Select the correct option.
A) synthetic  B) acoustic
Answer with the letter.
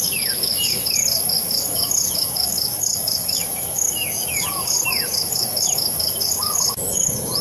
A